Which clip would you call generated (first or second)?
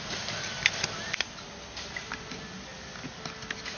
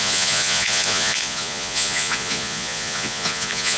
second